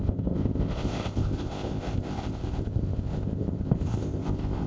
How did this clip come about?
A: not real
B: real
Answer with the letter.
A